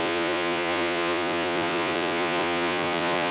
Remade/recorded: remade